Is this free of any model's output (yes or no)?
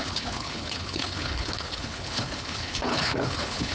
no